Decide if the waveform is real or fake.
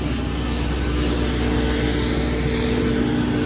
real